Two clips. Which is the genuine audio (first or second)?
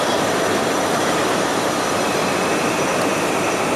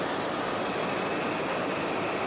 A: second